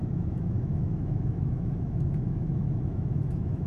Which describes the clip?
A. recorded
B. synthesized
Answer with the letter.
B